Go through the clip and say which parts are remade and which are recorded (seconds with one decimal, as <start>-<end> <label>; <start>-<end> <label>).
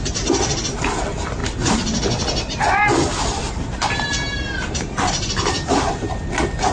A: 0.0-6.7 recorded